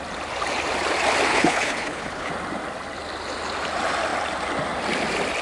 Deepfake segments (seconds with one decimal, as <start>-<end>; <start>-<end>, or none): 1.3-2.3

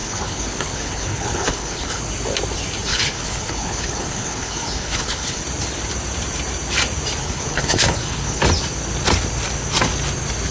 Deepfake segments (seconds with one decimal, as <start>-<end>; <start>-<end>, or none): 0.0-2.0; 2.9-5.4; 7.2-8.4